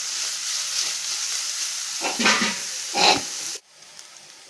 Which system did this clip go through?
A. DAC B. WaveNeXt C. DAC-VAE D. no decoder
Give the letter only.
D